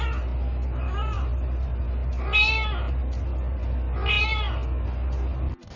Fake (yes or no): no